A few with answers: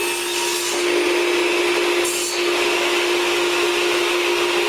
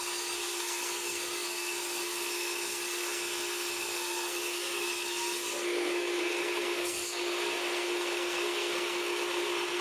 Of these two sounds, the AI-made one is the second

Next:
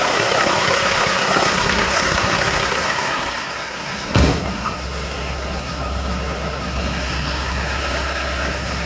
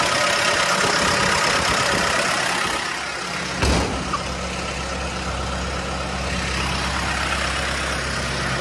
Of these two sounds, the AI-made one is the first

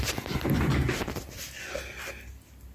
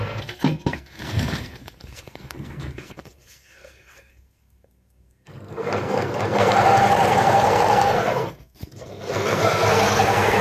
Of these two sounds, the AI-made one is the second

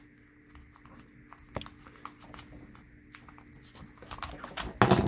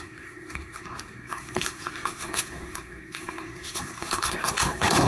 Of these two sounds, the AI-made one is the second